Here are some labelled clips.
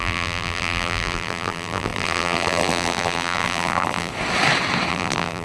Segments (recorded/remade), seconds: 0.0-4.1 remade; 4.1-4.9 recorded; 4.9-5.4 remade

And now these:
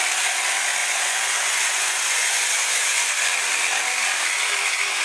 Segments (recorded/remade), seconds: 0.0-0.8 recorded; 0.8-3.1 remade; 3.1-5.0 recorded

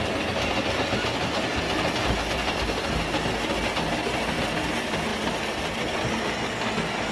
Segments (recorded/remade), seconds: 0.0-7.1 recorded

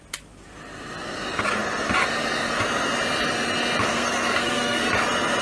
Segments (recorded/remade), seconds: 0.0-3.9 recorded; 3.9-4.9 remade; 4.9-5.4 recorded

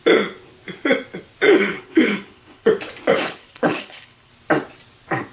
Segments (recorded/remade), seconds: 0.0-1.5 recorded; 1.5-2.7 remade; 2.7-3.1 recorded; 3.1-4.3 remade; 4.3-5.3 recorded

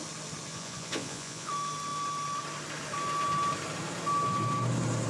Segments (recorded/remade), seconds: 0.0-0.5 recorded; 0.5-1.5 remade; 1.5-5.1 recorded

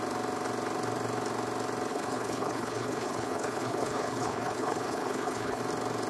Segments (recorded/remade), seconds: 0.0-1.9 recorded; 1.9-5.6 remade; 5.6-6.1 recorded

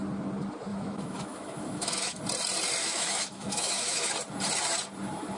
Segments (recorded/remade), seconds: 0.0-0.7 recorded; 0.7-2.2 remade; 2.2-2.8 recorded; 2.8-4.1 remade; 4.1-5.4 recorded